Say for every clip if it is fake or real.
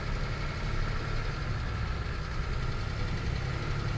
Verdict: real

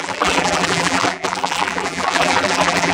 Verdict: fake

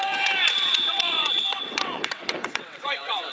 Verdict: fake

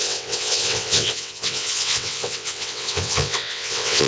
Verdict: fake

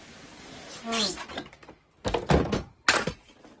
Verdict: real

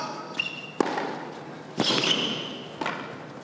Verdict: real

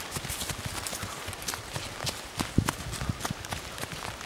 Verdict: real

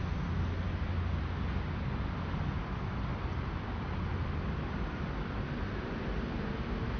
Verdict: real